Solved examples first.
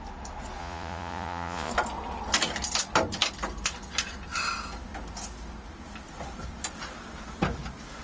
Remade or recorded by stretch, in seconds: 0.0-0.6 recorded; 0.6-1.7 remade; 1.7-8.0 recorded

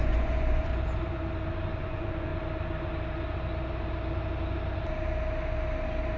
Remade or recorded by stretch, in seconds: 0.0-0.7 remade; 0.7-1.8 recorded; 1.8-2.3 remade; 2.3-6.2 recorded

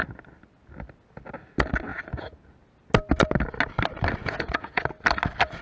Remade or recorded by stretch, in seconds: 0.0-4.2 recorded; 4.2-4.8 remade; 4.8-5.6 recorded

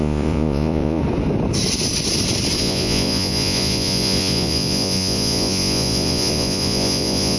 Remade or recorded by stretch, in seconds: 0.0-1.0 remade; 1.0-2.6 recorded; 2.6-7.4 remade